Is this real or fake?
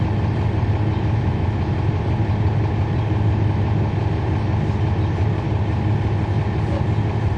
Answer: real